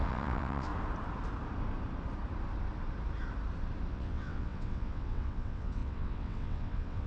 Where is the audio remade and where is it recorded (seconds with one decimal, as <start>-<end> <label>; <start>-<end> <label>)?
0.0-0.7 remade; 0.7-3.9 recorded; 3.9-7.1 remade